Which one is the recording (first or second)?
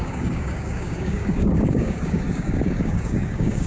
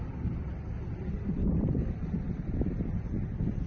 second